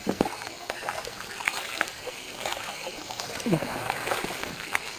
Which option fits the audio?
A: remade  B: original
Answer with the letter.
A